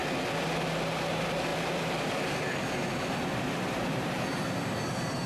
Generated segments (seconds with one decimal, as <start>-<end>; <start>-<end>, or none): 1.5-4.7